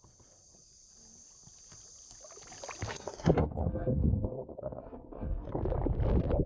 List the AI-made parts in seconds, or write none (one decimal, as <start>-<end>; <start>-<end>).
2.9-5.6